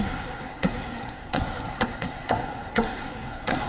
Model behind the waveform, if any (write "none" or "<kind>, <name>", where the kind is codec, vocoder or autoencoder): codec, SNAC